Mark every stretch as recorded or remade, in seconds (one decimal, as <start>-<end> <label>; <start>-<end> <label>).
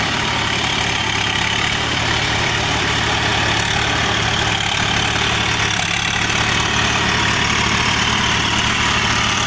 0.0-3.3 remade; 3.3-4.5 recorded; 4.5-9.5 remade